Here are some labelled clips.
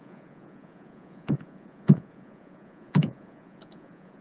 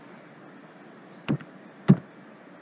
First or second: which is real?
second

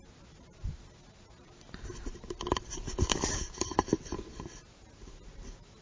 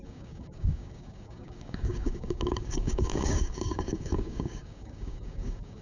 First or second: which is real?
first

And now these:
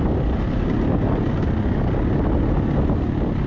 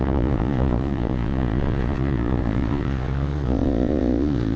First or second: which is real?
first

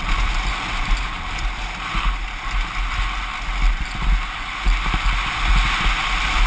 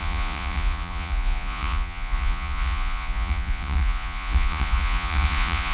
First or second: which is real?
first